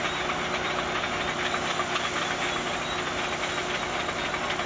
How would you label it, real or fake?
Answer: real